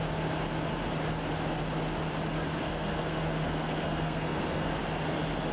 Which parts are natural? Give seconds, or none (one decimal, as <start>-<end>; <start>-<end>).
0.0-2.6; 4.8-5.5